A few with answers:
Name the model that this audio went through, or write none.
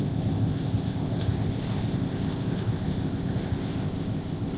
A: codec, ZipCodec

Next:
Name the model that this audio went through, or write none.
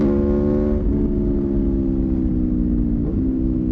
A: none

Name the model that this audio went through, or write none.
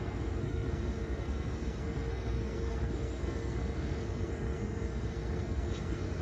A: codec, SNAC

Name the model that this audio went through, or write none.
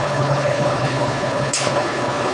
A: codec, HILCodec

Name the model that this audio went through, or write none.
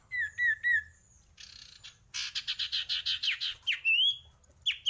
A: none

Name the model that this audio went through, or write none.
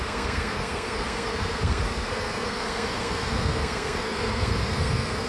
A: codec, SNAC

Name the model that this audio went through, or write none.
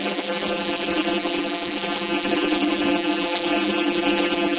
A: vocoder, BigVGAN v2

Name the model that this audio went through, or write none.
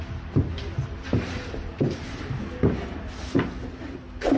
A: none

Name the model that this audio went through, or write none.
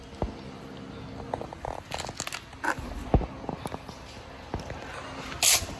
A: none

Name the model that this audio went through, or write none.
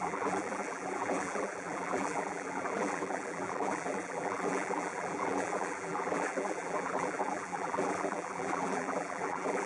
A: vocoder, BigVGAN v2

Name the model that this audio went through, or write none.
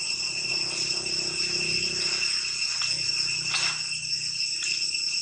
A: none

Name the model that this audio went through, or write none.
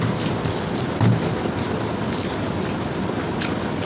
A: none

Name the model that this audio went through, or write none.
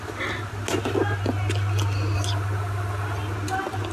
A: none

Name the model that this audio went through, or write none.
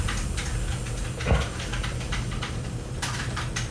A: vocoder, BigVGAN v2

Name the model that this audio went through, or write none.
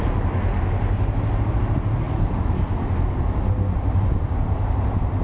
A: none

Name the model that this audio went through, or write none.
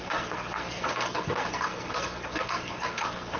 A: codec, SNAC